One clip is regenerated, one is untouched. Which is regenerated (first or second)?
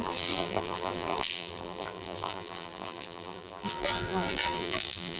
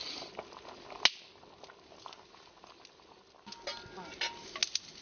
first